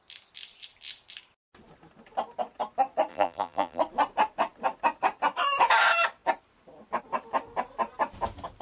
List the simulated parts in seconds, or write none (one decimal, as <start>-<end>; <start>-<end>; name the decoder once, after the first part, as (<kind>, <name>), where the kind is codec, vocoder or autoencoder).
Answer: 3.1-3.8 (vocoder, BigVGAN v2)